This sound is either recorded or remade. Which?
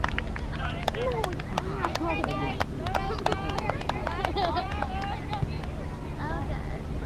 recorded